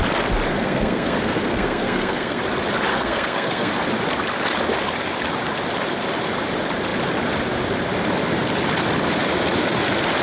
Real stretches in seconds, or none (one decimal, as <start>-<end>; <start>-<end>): 0.0-0.5; 2.4-2.9; 3.7-10.2